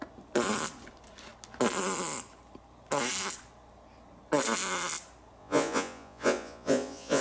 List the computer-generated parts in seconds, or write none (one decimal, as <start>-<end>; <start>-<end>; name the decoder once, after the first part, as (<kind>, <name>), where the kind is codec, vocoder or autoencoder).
5.4-7.2 (vocoder, Vocos)